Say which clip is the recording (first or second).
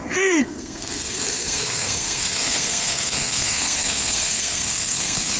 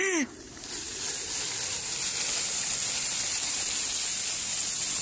second